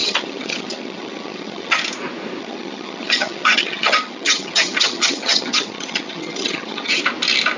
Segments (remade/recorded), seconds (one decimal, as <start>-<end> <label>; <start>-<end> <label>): 0.0-1.8 remade; 1.8-2.4 recorded; 2.4-7.0 remade; 7.0-7.6 recorded